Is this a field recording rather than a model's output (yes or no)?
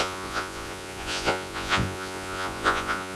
no